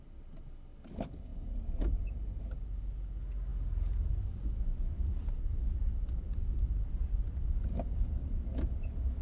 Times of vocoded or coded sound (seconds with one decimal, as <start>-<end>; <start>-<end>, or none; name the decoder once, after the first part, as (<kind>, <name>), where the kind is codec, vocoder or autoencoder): 3.5-8.5 (vocoder, BigVGAN v2)